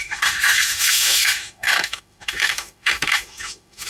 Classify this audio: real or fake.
fake